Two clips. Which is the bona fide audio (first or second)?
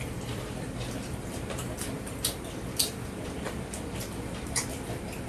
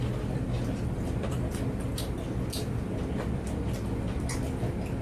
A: second